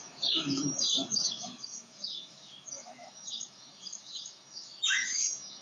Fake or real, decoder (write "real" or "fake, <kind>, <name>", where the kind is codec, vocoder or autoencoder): fake, autoencoder, DAC-VAE